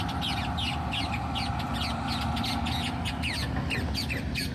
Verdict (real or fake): real